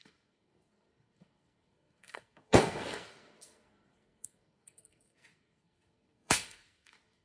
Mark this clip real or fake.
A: fake